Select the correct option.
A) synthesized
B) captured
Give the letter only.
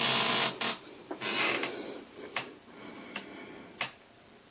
B